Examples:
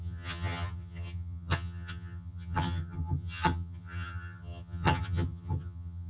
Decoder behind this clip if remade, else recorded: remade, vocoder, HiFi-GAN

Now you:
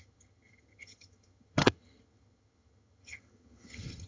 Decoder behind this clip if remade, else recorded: remade, vocoder, HiFi-GAN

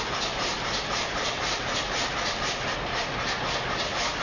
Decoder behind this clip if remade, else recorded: recorded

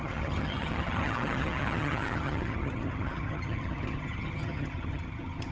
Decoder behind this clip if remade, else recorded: remade, vocoder, HiFi-GAN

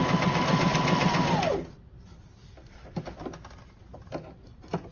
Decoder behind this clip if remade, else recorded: recorded